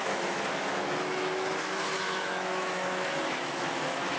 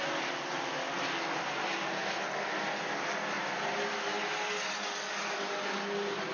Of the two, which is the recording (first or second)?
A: second